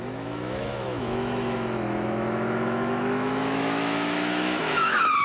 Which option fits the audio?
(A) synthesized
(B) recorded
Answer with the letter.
A